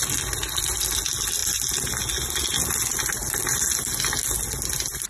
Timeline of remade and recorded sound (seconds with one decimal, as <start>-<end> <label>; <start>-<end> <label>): 0.0-5.1 recorded